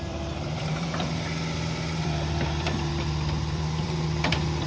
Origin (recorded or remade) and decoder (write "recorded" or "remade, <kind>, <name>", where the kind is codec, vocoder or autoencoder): remade, vocoder, BigVGAN v2